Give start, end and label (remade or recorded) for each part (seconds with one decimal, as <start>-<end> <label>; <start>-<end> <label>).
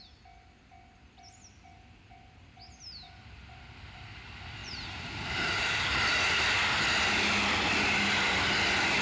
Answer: 0.0-4.6 recorded; 4.6-5.9 remade; 5.9-9.0 recorded